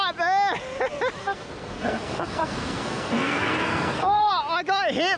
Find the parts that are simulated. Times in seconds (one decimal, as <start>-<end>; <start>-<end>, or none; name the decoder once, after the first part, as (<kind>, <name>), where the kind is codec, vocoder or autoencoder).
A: 1.2-4.3 (codec, SNAC)